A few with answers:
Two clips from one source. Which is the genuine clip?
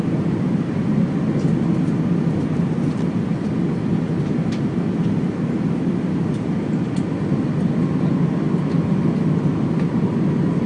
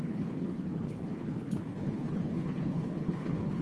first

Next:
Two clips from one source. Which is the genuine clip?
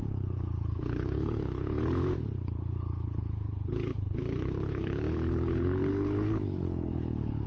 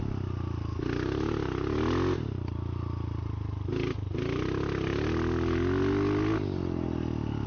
second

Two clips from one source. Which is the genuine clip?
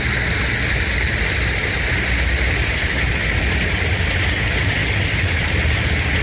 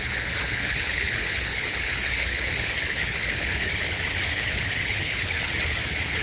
first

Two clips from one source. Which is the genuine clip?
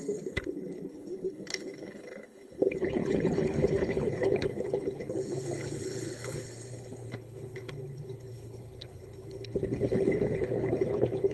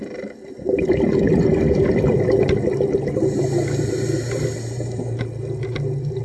second